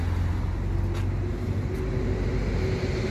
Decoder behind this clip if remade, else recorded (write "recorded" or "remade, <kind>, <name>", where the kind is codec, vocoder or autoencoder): recorded